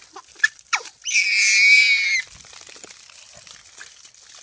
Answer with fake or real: real